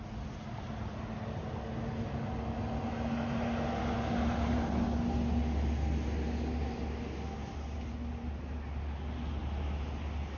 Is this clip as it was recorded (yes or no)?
yes